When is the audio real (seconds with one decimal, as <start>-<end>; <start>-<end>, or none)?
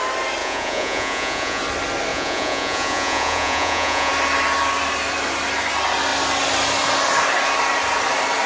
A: 0.0-0.4; 1.6-2.1; 4.1-8.5